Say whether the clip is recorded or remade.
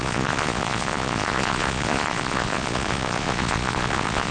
remade